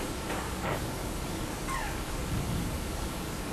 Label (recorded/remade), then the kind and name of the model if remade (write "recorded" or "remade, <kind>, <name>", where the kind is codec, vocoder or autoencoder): remade, codec, DAC